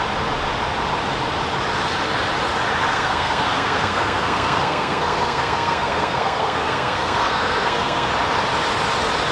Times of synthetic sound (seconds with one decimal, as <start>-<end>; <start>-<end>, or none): 2.9-8.1